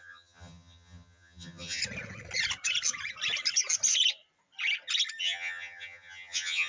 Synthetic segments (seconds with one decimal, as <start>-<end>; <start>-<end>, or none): 0.0-1.8; 5.2-6.7